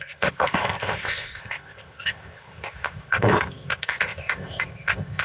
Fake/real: fake